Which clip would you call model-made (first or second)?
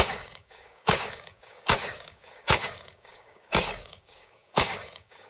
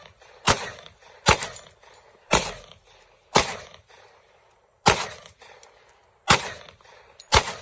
first